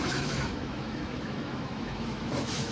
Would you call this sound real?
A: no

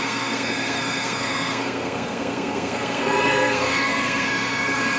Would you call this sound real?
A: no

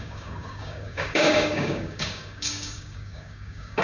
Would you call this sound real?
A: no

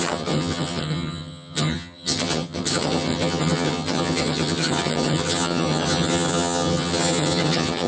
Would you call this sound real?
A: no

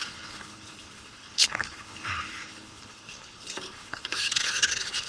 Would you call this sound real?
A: no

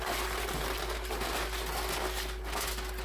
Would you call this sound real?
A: yes